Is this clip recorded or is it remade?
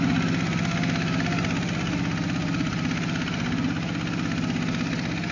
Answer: recorded